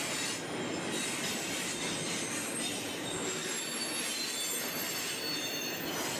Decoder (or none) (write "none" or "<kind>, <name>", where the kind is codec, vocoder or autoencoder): none